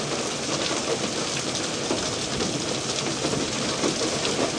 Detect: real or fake real